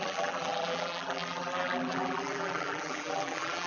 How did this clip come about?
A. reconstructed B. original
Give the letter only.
A